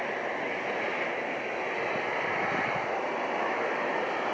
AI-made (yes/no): no